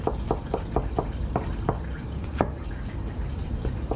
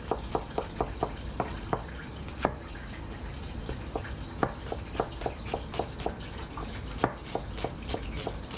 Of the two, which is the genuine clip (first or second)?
second